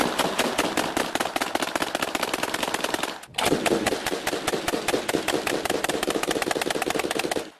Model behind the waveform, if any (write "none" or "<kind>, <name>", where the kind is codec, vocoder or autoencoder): none